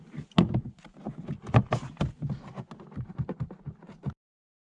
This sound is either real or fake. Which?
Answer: real